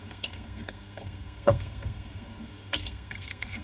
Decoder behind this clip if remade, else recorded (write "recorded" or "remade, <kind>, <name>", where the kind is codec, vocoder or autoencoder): remade, codec, SNAC